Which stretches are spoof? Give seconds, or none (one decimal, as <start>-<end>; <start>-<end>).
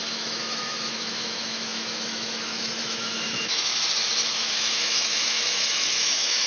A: 0.0-3.7; 4.3-6.5